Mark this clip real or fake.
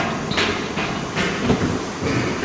real